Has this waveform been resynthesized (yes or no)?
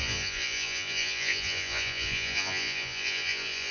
yes